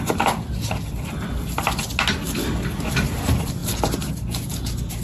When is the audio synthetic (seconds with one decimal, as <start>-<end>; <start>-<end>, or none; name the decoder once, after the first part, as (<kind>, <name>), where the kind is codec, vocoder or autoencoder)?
none